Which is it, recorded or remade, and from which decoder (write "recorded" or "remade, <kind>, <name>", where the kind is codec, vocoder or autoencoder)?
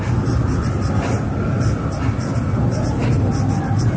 recorded